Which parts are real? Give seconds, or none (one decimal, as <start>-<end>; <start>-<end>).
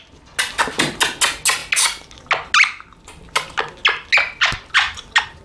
0.0-5.4